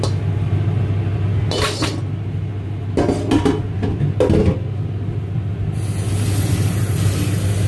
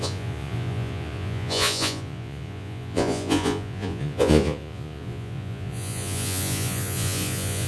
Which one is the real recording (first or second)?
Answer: first